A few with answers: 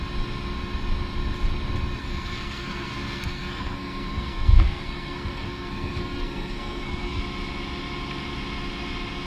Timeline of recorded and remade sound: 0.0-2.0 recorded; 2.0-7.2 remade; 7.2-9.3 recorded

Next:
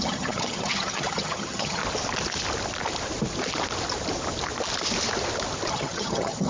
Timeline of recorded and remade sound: 0.0-1.8 remade; 1.8-5.7 recorded; 5.7-6.5 remade

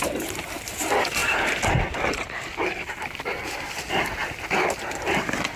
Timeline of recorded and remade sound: 0.0-5.6 recorded